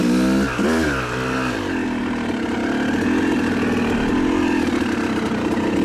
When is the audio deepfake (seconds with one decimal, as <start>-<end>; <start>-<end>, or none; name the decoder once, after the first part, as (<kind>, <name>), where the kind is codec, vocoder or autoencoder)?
none

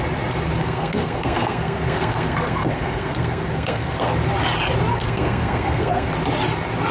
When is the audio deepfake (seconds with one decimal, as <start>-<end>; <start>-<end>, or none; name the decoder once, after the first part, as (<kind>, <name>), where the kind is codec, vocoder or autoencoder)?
0.6-4.1 (codec, SNAC); 4.9-6.1

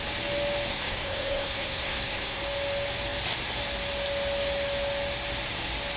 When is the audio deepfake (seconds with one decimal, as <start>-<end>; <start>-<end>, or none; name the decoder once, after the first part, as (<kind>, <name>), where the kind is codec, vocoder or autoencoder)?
0.7-2.4 (codec, SNAC)

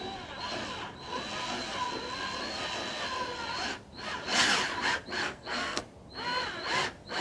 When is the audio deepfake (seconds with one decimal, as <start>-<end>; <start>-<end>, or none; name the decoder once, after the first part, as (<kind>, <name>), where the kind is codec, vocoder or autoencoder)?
5.2-5.8 (codec, SNAC)